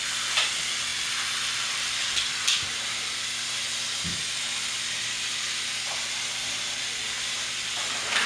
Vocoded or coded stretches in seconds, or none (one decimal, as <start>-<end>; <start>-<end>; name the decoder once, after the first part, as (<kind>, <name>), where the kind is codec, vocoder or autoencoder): 0.9-2.9 (vocoder, BigVGAN v2)